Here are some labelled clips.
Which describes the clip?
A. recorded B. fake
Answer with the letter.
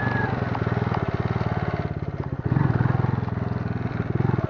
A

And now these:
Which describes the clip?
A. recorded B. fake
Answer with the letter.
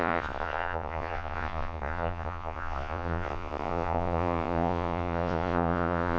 B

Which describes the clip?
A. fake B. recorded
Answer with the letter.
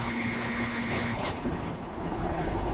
A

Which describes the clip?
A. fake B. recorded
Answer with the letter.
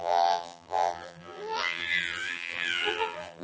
A